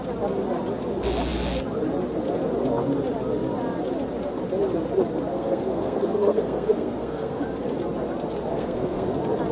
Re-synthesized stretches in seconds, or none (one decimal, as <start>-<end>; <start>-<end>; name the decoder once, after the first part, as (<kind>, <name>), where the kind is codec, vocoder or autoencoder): 5.3-7.4 (codec, SNAC); 8.5-9.1